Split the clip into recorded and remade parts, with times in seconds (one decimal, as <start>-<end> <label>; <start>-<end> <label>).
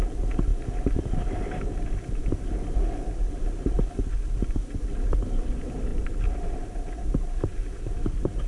0.0-5.9 recorded; 5.9-8.5 remade